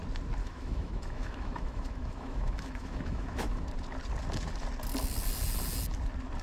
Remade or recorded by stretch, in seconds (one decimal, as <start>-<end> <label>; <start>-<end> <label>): 0.0-0.4 recorded; 0.4-3.7 remade; 3.7-6.4 recorded